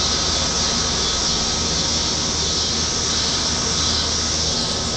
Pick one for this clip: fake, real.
real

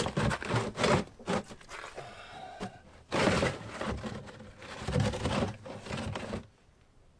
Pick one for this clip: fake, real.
real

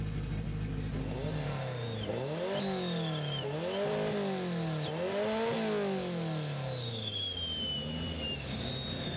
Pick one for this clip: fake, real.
real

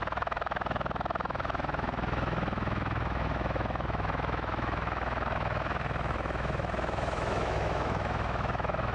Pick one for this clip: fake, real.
fake